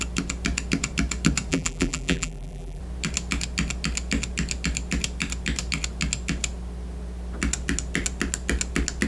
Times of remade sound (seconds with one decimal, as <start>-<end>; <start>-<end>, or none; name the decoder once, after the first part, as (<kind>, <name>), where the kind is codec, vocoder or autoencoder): 1.5-2.8 (vocoder, BigVGAN v2)